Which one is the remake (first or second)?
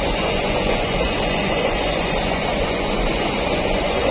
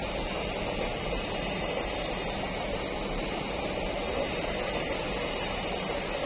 first